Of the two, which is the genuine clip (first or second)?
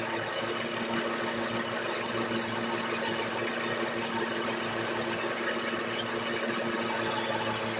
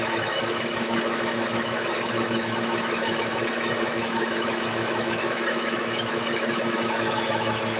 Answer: first